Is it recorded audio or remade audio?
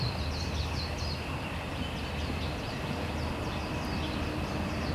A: recorded